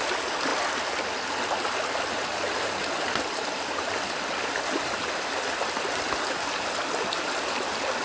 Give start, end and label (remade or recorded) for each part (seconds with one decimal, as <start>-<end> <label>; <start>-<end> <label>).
0.0-8.0 recorded